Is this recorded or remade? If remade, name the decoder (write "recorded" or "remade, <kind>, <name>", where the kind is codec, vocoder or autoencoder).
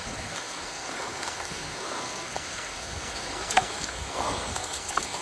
remade, codec, SNAC